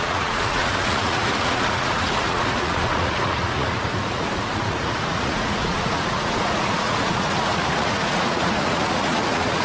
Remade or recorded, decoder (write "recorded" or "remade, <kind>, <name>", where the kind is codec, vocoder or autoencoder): remade, vocoder, Vocos